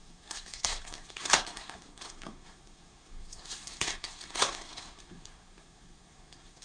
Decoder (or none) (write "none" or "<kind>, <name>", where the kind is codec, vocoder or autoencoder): codec, SNAC